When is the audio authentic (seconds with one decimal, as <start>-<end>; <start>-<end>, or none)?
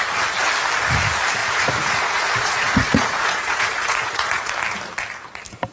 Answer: 0.0-1.4; 4.5-5.7